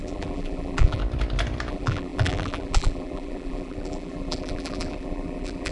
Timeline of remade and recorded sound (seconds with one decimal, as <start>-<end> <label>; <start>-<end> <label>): 0.0-1.0 remade; 1.0-1.7 recorded; 1.7-5.7 remade